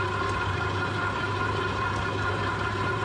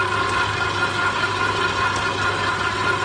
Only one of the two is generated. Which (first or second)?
first